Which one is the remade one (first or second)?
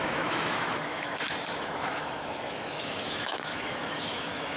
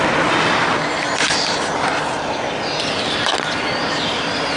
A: first